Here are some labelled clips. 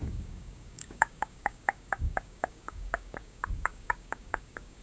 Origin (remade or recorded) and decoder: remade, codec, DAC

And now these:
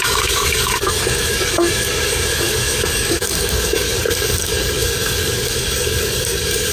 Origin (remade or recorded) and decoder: remade, codec, DAC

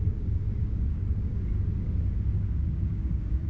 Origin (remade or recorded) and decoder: remade, codec, DAC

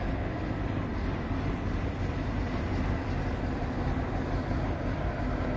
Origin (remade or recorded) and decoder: recorded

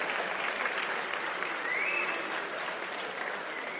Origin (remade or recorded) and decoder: recorded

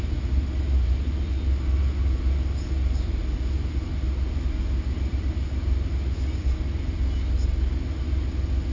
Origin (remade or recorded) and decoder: recorded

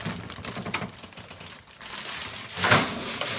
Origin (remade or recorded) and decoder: recorded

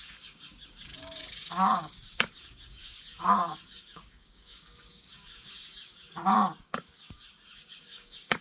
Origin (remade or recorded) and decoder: remade, codec, DAC